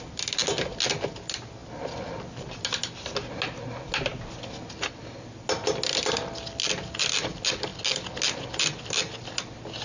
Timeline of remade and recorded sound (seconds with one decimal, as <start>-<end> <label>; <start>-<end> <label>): 0.0-9.8 recorded